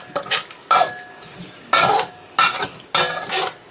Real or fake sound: real